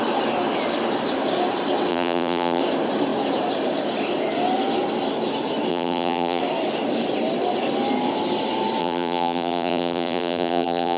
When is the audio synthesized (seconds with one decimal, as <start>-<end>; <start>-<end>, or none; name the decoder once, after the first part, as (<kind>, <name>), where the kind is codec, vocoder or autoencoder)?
1.9-2.6 (vocoder, BigVGAN v2); 5.7-6.4; 8.8-11.0